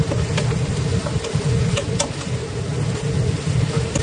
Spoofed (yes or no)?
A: no